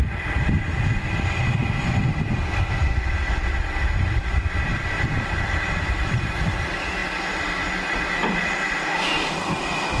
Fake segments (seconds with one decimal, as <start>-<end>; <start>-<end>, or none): 4.7-6.5